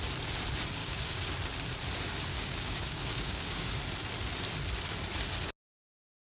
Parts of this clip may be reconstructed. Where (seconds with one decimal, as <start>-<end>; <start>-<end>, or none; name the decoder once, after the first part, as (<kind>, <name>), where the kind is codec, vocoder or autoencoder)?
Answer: 0.8-1.3 (codec, DAC); 2.3-3.7